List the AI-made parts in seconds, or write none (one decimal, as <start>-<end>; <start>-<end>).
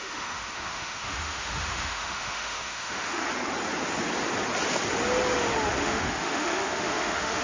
0.0-3.2; 5.8-7.4